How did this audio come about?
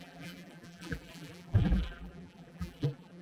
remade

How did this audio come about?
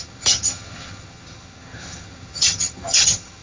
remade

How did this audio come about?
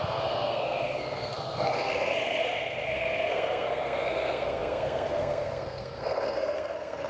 remade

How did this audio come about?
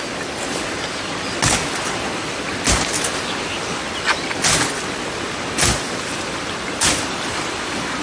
recorded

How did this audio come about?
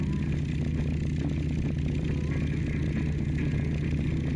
recorded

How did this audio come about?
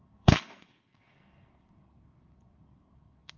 remade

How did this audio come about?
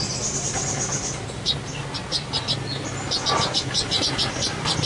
recorded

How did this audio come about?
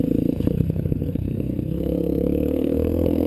remade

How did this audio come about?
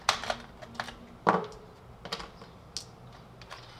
recorded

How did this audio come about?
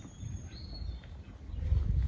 recorded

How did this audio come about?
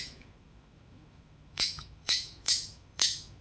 remade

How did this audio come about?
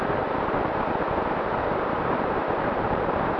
remade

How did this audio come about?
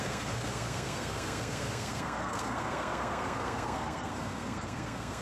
remade